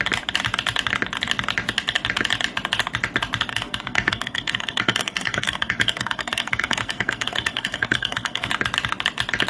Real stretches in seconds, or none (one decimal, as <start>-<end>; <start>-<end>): 0.0-3.5; 8.5-9.5